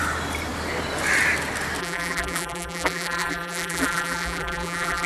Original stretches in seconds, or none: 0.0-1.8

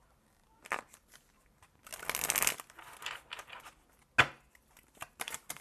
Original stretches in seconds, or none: 1.9-3.2; 4.0-4.6

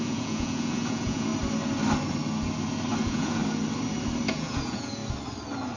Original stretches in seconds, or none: 1.3-3.0; 3.4-4.3; 5.0-5.8

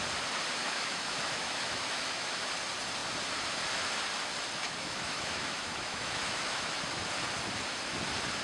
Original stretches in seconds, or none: 0.0-0.6; 2.5-4.8; 6.8-8.4

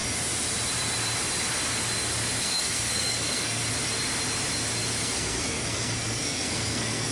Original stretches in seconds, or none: 0.0-2.4; 3.6-5.0

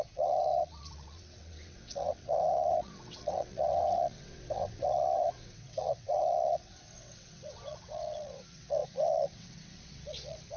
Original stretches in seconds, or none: none

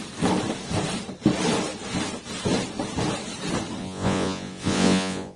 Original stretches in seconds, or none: 0.0-3.8

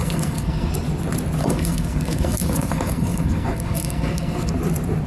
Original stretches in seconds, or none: 0.7-1.4; 4.5-5.1